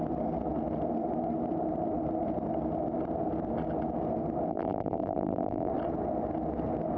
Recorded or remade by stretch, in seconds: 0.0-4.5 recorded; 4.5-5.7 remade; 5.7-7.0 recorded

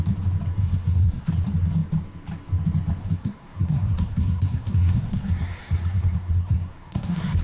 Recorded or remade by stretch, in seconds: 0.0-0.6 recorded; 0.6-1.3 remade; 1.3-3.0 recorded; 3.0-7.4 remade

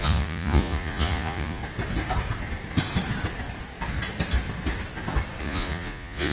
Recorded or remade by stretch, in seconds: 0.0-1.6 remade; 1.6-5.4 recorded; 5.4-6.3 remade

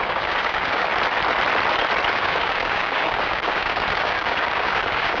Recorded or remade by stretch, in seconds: 0.0-0.9 remade; 0.9-2.1 recorded; 2.1-5.2 remade

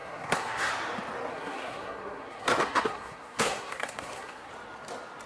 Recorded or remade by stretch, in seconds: 0.0-0.7 remade; 0.7-1.3 recorded; 1.3-4.5 remade; 4.5-5.3 recorded

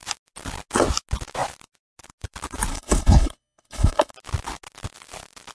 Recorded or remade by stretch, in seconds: 0.0-2.7 recorded; 2.7-4.1 remade; 4.1-5.5 recorded